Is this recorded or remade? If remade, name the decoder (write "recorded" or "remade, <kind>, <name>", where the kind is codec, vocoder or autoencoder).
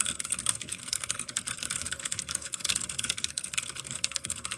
remade, codec, SNAC